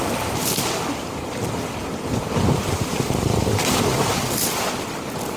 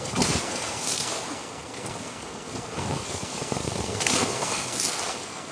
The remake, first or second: second